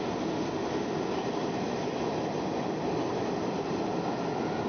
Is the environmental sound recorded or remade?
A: recorded